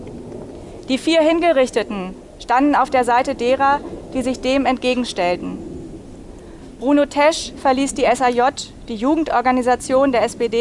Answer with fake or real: real